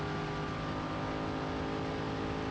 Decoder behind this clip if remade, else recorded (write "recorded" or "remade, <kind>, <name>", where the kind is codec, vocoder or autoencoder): recorded